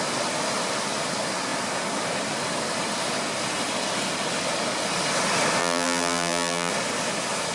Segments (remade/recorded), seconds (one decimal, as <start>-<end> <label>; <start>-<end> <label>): 0.0-5.6 recorded; 5.6-6.7 remade; 6.7-7.5 recorded